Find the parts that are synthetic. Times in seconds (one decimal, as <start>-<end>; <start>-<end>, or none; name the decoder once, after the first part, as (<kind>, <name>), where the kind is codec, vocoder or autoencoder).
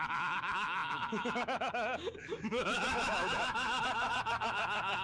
0.0-5.0 (autoencoder, DAC-VAE)